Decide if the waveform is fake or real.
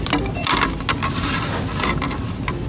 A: real